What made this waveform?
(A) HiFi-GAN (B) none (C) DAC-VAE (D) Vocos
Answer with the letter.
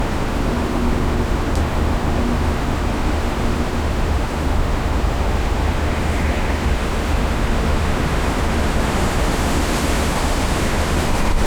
C